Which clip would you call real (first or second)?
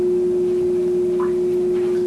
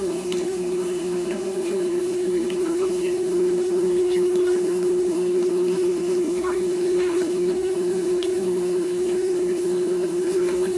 first